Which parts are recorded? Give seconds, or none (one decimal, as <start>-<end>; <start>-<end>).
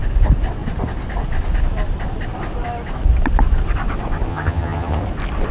0.0-4.3; 5.0-5.5